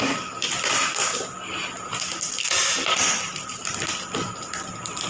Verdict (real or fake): real